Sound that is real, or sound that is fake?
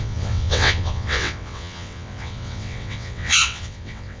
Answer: fake